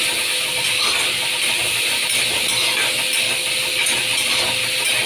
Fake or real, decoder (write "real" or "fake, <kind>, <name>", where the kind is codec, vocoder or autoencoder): real